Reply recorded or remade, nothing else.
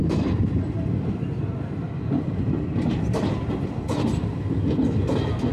recorded